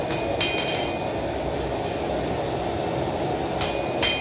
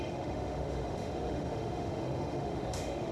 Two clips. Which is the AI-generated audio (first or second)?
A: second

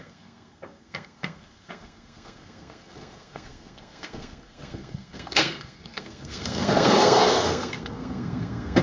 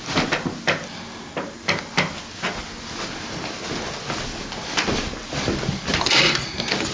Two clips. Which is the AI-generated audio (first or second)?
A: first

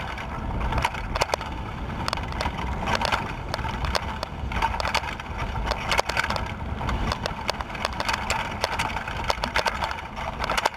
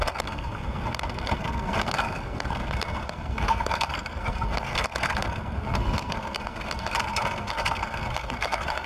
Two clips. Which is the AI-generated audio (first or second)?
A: second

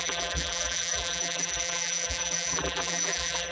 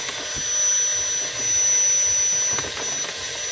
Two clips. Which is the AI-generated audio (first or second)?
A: first